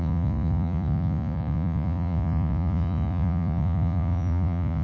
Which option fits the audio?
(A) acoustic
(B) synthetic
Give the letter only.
B